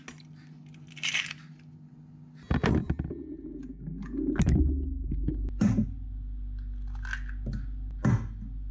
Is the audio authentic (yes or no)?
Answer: yes